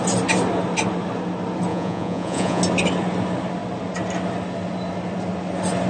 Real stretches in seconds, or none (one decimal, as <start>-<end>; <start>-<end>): 0.0-1.7; 2.6-5.9